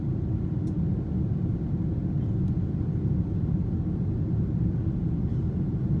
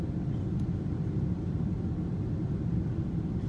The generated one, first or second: second